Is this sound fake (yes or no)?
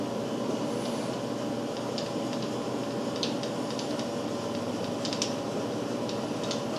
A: no